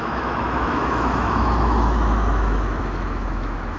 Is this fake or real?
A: fake